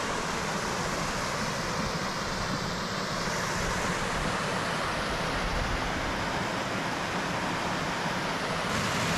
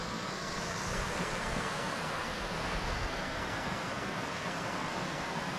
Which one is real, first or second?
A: first